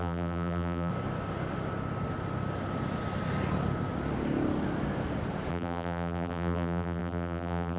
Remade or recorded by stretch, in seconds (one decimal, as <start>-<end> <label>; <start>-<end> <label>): 0.0-0.9 remade; 0.9-5.5 recorded; 5.5-7.8 remade